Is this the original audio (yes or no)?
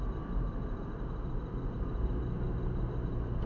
yes